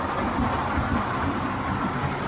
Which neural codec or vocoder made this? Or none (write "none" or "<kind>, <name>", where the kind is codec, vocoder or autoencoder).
none